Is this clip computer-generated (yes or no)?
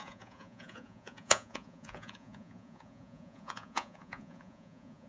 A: yes